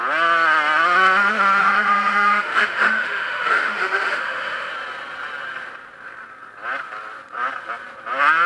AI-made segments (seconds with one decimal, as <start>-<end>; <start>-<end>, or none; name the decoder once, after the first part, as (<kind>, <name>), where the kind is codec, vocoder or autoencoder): 1.6-4.7 (autoencoder, DAC-VAE)